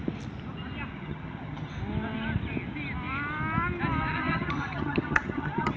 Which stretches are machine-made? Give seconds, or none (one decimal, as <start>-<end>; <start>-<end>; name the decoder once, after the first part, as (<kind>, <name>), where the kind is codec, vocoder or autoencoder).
0.9-1.7 (vocoder, HiFi-GAN); 4.1-5.8